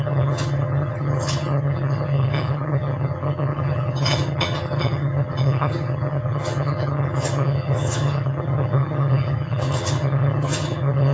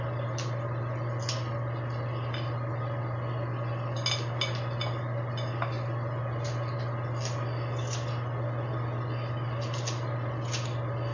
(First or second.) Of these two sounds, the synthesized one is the first